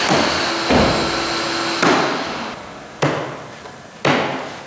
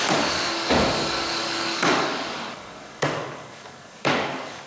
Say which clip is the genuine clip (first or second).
first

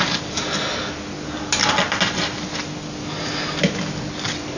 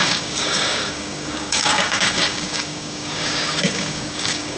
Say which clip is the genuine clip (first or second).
first